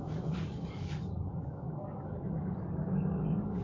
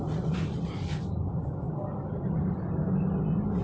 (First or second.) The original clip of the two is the second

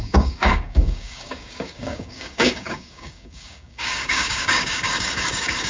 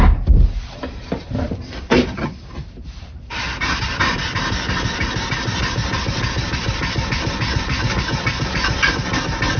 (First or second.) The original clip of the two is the second